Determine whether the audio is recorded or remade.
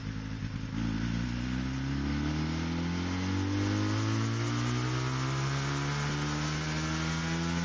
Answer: recorded